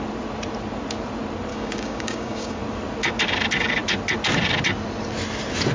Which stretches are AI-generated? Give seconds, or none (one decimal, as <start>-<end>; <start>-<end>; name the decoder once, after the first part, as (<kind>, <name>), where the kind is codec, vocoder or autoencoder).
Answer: 1.5-2.6 (codec, DAC)